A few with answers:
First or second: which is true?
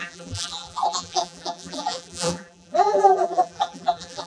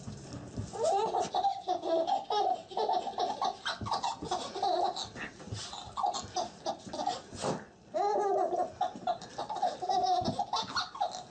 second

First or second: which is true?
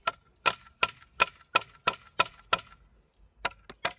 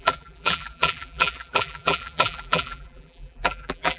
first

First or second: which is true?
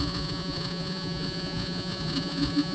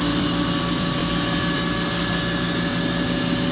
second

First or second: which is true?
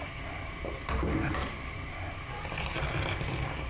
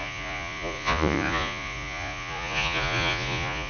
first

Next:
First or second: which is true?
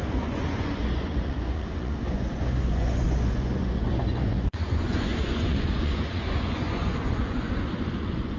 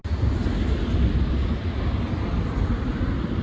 second